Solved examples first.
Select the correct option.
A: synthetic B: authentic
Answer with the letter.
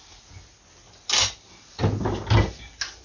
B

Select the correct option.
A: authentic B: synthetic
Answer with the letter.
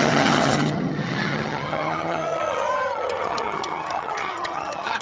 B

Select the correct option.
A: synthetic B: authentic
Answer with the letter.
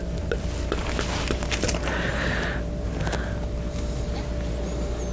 B